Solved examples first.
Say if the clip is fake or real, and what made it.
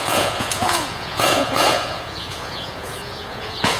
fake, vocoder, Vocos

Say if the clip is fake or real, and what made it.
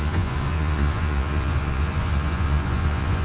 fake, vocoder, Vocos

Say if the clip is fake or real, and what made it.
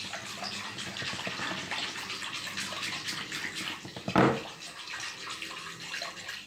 real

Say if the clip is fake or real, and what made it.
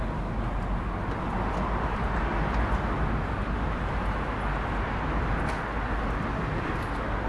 real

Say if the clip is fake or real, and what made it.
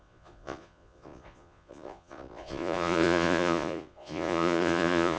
fake, vocoder, Vocos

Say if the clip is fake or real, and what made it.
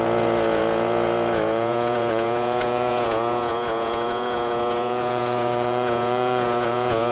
fake, vocoder, Vocos